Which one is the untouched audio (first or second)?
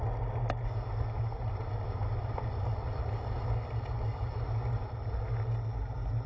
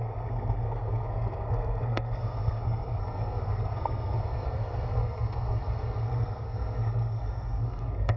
first